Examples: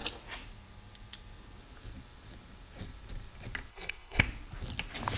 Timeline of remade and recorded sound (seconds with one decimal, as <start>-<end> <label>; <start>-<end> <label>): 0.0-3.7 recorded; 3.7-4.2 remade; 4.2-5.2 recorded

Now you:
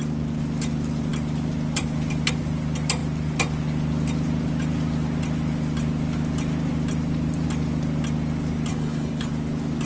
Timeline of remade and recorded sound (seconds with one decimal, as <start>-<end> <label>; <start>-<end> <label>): 0.0-8.7 recorded; 8.7-9.3 remade; 9.3-9.9 recorded

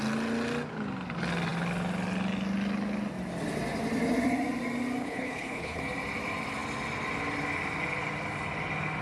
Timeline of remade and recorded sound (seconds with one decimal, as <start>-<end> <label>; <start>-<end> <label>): 0.0-5.0 recorded; 5.0-5.8 remade; 5.8-9.0 recorded

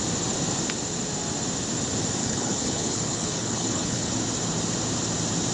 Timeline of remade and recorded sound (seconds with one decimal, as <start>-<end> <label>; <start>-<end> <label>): 0.0-2.2 recorded; 2.2-4.1 remade; 4.1-5.5 recorded

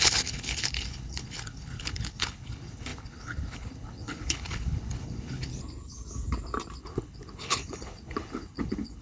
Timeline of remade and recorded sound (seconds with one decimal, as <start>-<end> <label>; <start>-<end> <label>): 0.0-5.5 remade; 5.5-6.8 recorded; 6.8-9.0 remade

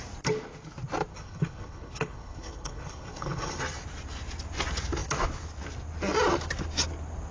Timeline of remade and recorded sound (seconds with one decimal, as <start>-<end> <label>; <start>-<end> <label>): 0.0-1.1 recorded; 1.1-3.6 remade; 3.6-7.3 recorded

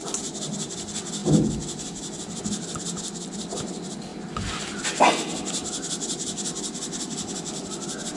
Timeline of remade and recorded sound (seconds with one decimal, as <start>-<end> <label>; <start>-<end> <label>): 0.0-8.2 recorded